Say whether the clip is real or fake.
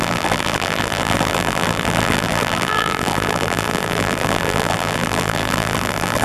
fake